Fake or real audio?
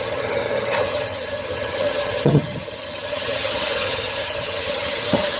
fake